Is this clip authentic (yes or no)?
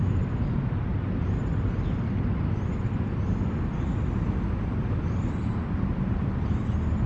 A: yes